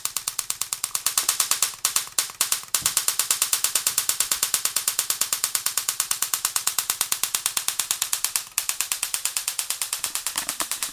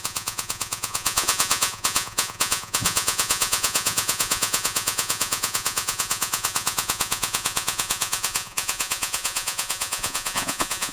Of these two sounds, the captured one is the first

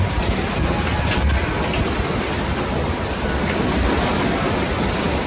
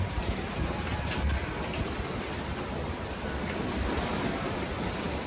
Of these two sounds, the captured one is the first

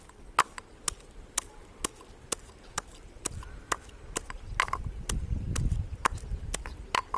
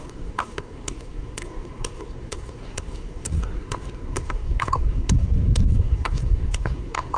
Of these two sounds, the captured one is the first